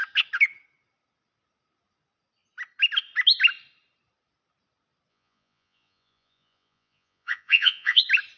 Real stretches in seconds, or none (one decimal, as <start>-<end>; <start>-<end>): 0.0-5.1; 8.0-8.4